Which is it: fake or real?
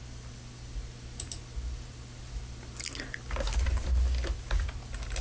real